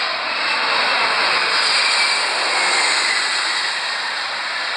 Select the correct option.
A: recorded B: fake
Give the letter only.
A